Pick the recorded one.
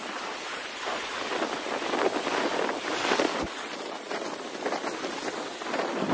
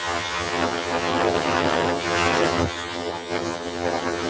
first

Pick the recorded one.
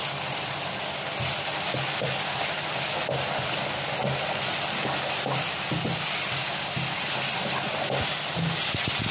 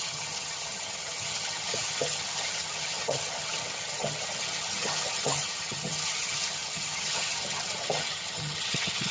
first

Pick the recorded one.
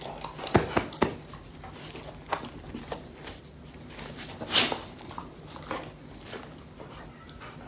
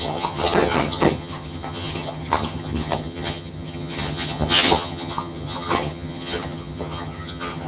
first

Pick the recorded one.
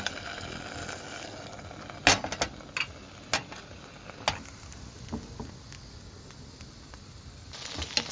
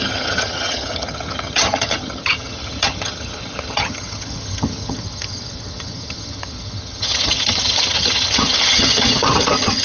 first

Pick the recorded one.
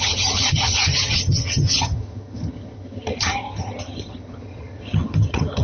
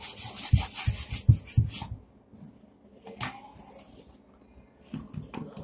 second